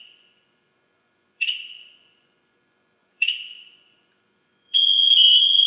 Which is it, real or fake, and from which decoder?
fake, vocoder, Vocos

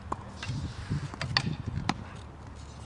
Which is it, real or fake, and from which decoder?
real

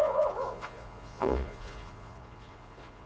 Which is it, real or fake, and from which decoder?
fake, vocoder, Vocos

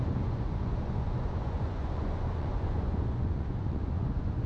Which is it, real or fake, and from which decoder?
fake, vocoder, Vocos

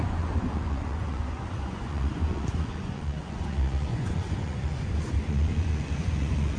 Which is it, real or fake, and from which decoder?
fake, vocoder, Vocos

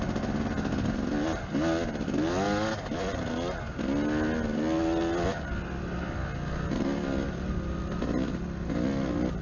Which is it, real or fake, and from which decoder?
real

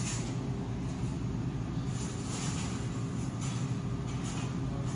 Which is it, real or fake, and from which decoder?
real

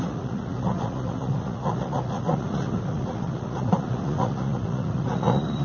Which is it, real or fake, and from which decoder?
fake, vocoder, Vocos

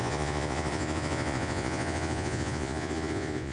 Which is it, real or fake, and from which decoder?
fake, vocoder, Vocos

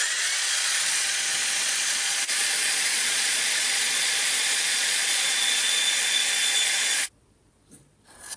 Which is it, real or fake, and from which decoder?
fake, vocoder, Vocos